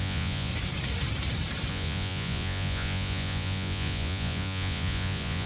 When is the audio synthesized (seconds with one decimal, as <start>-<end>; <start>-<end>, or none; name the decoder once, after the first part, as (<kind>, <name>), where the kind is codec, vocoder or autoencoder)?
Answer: 0.0-0.5 (vocoder, Vocos); 1.7-5.5